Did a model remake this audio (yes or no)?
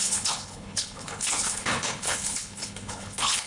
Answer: yes